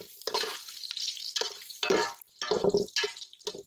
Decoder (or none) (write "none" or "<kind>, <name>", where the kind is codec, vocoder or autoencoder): none